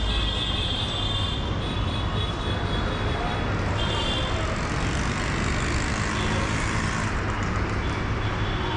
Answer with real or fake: real